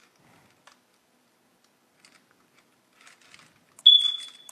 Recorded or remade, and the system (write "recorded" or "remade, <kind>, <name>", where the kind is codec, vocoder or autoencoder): recorded